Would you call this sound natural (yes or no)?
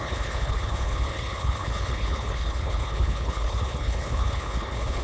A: no